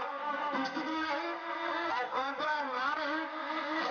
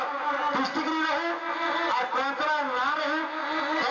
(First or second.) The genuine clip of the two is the second